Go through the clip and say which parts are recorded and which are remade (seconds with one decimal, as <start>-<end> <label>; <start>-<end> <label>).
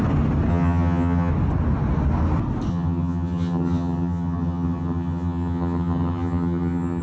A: 0.0-0.5 recorded; 0.5-1.3 remade; 1.3-2.7 recorded; 2.7-7.0 remade